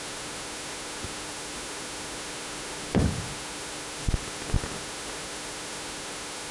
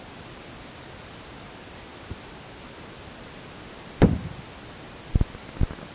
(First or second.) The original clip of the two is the second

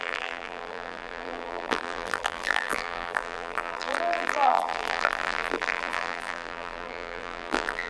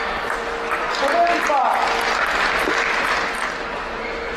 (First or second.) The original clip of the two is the second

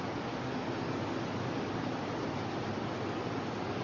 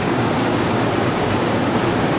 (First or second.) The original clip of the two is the first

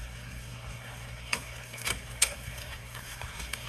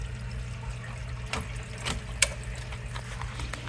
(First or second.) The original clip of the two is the second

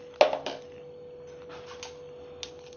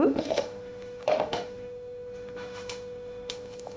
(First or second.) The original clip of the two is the first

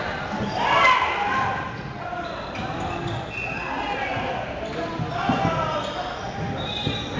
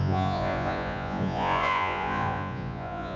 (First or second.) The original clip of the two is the first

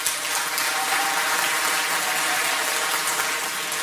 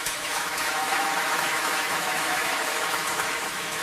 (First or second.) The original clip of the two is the first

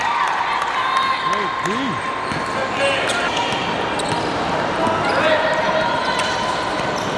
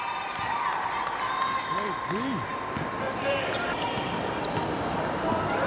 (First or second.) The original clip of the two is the first